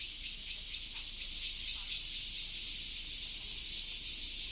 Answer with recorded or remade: recorded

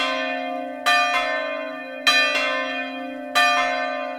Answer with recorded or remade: recorded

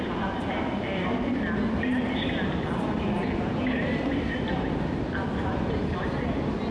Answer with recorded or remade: recorded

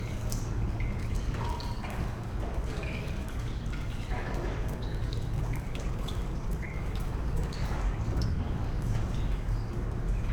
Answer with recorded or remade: remade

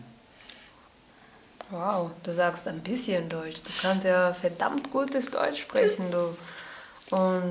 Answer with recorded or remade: recorded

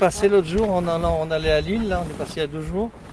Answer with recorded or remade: recorded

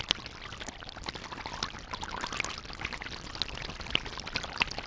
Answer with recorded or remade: recorded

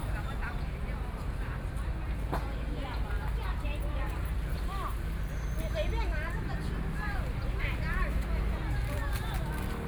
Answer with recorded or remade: recorded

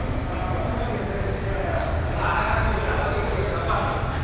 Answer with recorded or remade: recorded